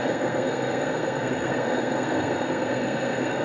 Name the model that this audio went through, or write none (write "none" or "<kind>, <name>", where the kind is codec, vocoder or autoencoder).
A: codec, SNAC